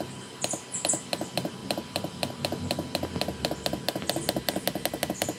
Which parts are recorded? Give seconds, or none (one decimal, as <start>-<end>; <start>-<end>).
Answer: 0.0-5.4